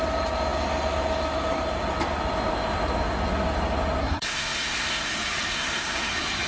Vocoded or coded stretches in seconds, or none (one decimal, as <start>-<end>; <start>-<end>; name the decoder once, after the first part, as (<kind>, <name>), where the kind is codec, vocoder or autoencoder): 4.0-5.1 (codec, SNAC); 5.5-6.1